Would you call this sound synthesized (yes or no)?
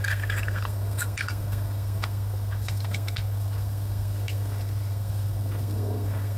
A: yes